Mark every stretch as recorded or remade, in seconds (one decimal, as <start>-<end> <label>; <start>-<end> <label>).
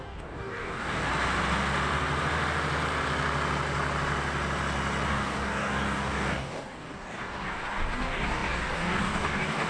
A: 0.0-1.1 remade; 1.1-5.1 recorded; 5.1-9.7 remade